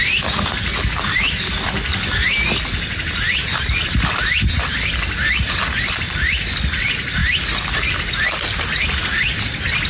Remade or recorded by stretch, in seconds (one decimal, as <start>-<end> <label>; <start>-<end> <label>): 0.0-9.9 recorded